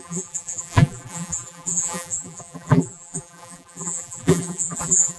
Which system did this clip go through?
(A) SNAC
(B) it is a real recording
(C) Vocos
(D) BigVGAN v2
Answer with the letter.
D